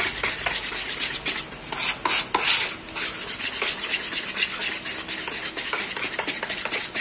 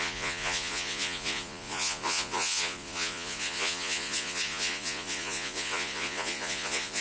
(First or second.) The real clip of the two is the first